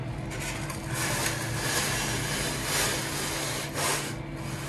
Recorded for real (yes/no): yes